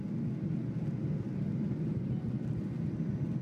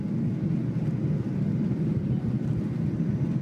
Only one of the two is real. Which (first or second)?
first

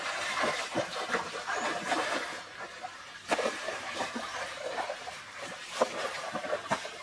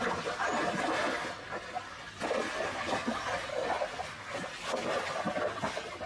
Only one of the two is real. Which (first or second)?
second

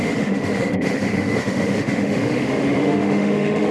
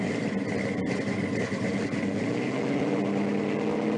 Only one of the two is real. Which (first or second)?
second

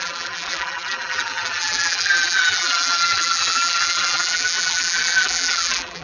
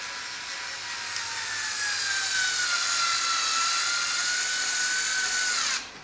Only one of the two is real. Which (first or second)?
second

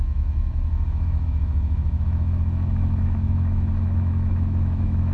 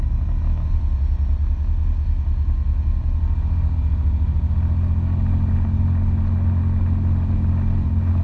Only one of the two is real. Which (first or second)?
second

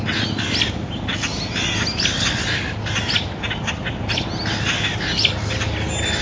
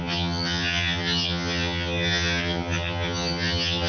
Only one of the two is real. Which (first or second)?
first